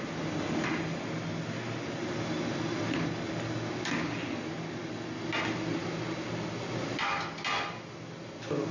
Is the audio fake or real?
real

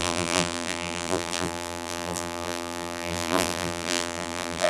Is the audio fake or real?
fake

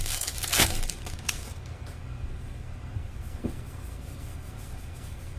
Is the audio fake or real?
fake